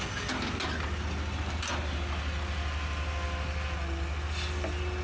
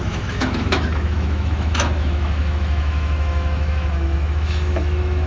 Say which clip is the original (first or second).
first